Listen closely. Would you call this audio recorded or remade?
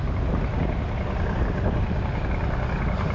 recorded